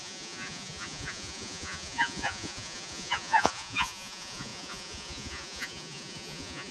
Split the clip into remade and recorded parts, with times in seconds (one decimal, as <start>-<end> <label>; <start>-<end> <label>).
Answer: 0.0-6.7 remade